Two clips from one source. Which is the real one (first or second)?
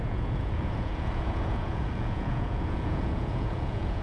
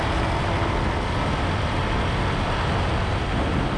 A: second